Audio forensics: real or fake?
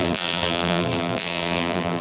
fake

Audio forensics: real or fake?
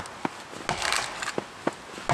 real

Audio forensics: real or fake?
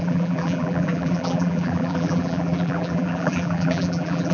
fake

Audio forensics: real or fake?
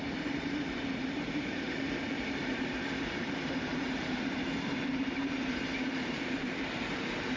fake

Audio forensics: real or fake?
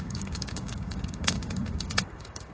fake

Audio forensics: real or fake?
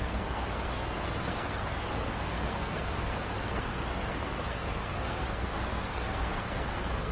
fake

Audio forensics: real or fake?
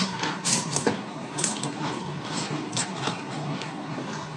fake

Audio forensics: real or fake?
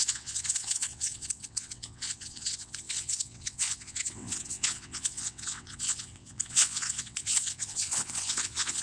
fake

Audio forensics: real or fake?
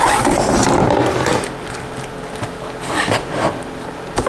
real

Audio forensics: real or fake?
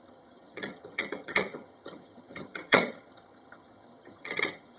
fake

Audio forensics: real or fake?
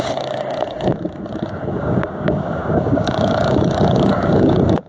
fake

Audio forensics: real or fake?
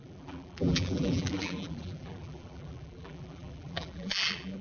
fake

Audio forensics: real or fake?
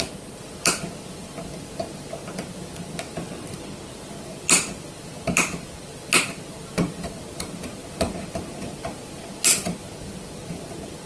real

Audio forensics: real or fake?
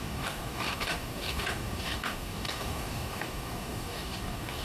fake